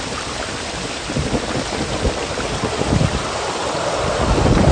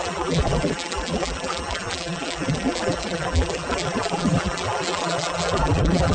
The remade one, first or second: second